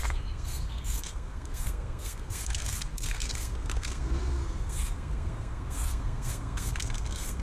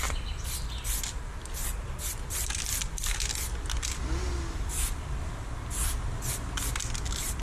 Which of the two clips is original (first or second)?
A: second